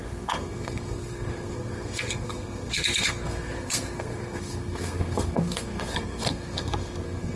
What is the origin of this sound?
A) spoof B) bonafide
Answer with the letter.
A